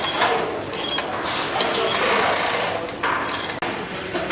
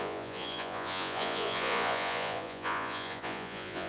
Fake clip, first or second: second